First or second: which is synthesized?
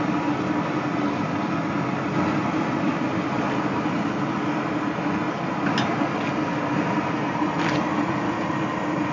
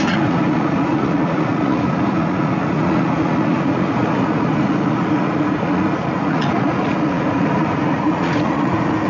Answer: second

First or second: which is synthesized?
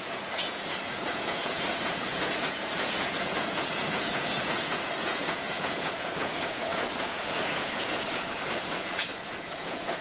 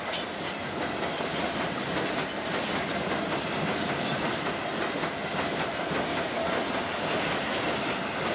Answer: first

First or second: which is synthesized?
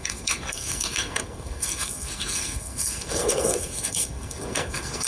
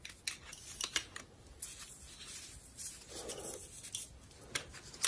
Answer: first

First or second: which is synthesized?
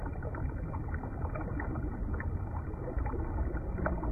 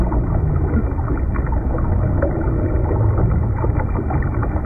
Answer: first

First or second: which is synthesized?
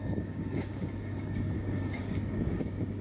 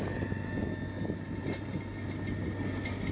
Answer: first